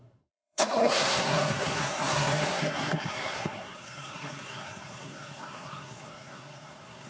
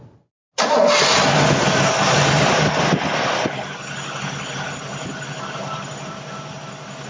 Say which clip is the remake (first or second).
first